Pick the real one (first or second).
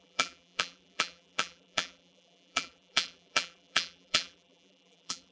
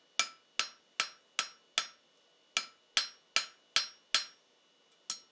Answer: second